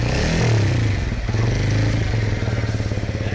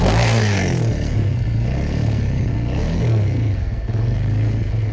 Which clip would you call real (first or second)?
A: first